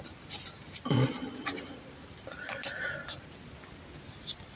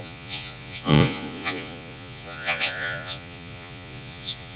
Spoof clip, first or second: second